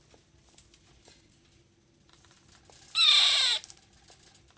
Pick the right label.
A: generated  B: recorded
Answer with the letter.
B